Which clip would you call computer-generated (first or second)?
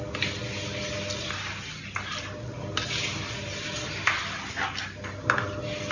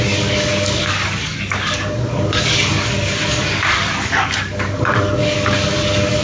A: second